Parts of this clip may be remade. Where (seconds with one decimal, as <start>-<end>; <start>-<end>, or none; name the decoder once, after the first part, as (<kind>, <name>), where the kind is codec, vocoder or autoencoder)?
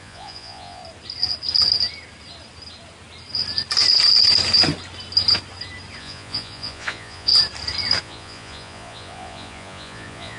0.0-0.8 (vocoder, Vocos); 6.0-7.3; 8.0-10.4